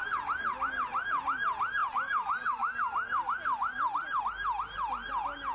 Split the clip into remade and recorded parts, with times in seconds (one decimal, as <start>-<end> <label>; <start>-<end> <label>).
0.0-5.5 recorded